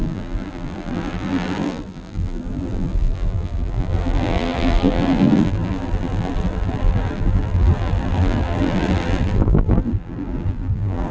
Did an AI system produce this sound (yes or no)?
yes